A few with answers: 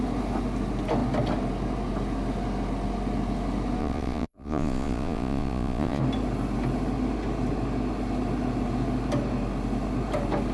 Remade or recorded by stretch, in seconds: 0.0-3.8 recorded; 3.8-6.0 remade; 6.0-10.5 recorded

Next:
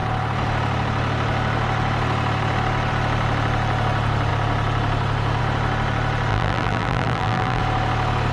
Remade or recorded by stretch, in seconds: 0.0-6.3 recorded; 6.3-7.6 remade; 7.6-8.3 recorded

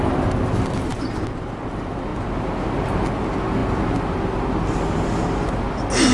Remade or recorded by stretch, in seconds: 0.0-6.1 recorded

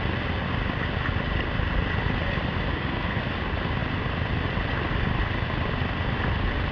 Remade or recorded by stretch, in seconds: 0.0-2.7 recorded; 2.7-3.2 remade; 3.2-6.7 recorded

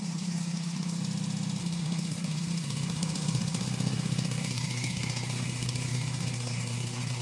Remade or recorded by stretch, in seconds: 0.0-1.0 remade; 1.0-1.6 recorded; 1.6-7.2 remade

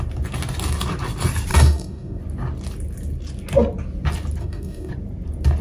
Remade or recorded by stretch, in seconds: 0.0-1.5 recorded; 1.5-2.2 remade; 2.2-4.4 recorded; 4.4-4.9 remade; 4.9-5.6 recorded

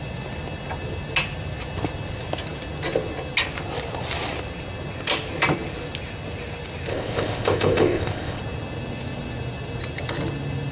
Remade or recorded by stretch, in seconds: 0.0-6.9 recorded; 6.9-8.4 remade; 8.4-10.7 recorded

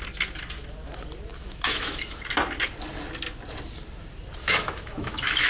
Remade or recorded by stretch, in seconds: 0.0-1.4 recorded; 1.4-2.2 remade; 2.2-4.4 recorded; 4.4-5.5 remade